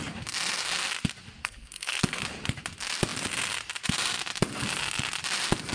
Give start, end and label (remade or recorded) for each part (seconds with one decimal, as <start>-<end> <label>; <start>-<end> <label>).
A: 0.0-1.4 recorded; 1.4-2.2 remade; 2.2-5.7 recorded